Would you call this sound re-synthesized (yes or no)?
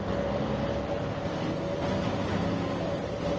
no